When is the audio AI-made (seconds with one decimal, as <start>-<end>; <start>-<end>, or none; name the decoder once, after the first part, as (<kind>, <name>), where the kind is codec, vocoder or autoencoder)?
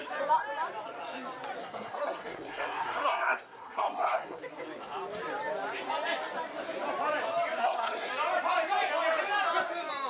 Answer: 1.6-4.4 (codec, SNAC); 7.6-8.1